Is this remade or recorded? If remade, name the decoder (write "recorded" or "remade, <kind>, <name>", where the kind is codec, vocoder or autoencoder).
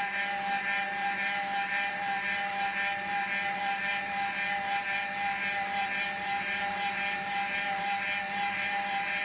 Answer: remade, vocoder, BigVGAN v2